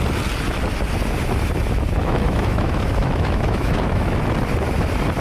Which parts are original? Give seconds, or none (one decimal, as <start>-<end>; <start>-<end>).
0.0-2.0; 4.2-5.2